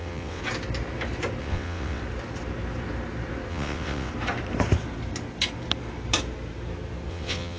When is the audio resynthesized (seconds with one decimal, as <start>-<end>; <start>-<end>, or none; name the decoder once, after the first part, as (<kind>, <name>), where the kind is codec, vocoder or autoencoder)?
0.0-0.4 (vocoder, WaveNeXt); 1.4-2.0; 3.5-4.1; 7.1-7.6

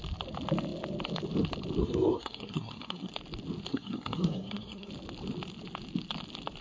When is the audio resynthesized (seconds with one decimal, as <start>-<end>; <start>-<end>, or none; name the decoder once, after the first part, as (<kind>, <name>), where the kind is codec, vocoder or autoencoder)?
1.8-3.1 (codec, SNAC); 3.7-4.9